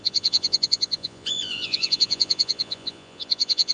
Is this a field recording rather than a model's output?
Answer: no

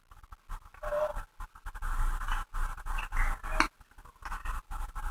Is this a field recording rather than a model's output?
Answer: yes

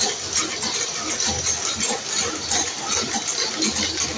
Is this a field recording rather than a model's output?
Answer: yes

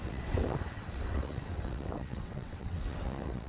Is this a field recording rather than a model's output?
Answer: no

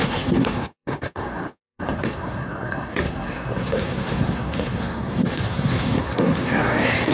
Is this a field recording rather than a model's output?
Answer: no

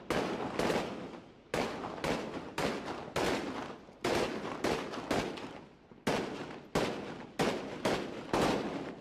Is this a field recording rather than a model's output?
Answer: yes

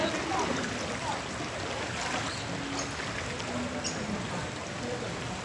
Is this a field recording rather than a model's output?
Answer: yes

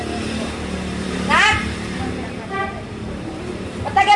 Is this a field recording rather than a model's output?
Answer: no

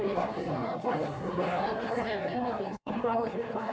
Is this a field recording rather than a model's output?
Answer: no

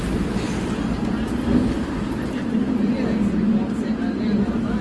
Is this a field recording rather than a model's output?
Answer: yes